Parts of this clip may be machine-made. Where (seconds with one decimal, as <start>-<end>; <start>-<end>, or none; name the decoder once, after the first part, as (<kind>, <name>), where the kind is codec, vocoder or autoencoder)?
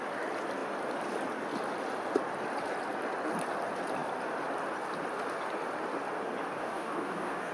6.6-7.5 (codec, DAC)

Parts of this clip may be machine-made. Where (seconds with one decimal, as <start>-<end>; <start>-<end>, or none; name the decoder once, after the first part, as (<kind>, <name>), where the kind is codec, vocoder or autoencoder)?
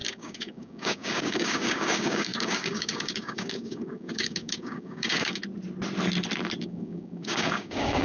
0.0-5.4 (codec, DAC); 6.6-8.0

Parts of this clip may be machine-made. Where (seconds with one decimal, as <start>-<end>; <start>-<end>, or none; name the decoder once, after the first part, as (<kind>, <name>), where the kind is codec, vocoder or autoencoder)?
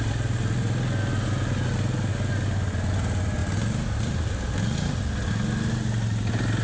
none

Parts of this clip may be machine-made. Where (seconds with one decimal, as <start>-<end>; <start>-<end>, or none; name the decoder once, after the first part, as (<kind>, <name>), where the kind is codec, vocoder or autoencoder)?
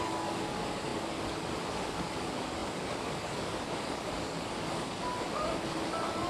0.0-6.3 (codec, DAC)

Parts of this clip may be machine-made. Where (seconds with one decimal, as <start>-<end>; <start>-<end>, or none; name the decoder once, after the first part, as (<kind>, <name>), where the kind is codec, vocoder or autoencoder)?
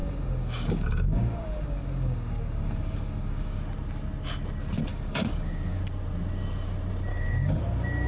0.0-3.6 (codec, DAC); 4.9-5.8; 7.1-7.6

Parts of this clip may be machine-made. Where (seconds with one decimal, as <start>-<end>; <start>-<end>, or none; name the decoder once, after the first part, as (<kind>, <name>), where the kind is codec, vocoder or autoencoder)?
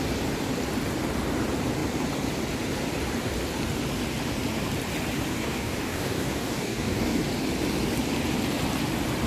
5.3-7.3 (codec, DAC)